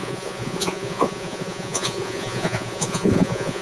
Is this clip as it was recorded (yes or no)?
no